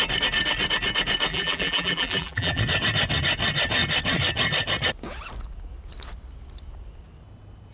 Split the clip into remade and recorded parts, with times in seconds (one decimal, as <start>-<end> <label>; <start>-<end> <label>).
0.0-1.3 recorded; 1.3-2.6 remade; 2.6-7.7 recorded